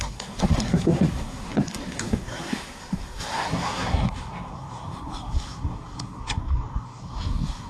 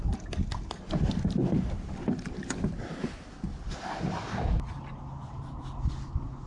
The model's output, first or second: first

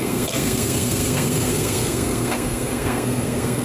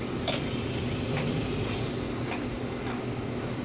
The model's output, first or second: first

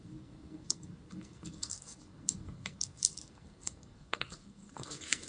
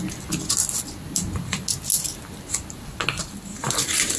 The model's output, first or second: first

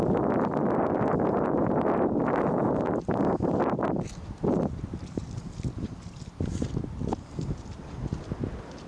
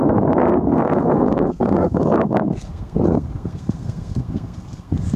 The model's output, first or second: second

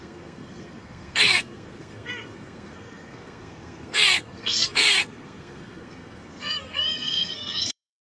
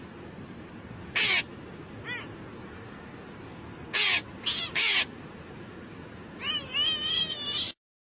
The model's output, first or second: first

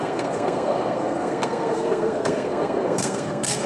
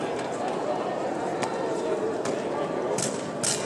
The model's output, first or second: first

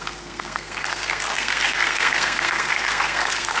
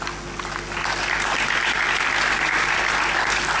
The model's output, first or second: first